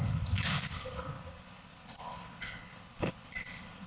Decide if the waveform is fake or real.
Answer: fake